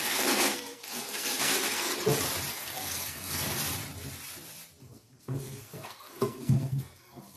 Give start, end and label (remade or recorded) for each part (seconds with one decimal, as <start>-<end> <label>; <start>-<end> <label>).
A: 0.0-1.9 remade; 1.9-2.5 recorded; 2.5-3.5 remade; 3.5-4.8 recorded; 4.8-7.4 remade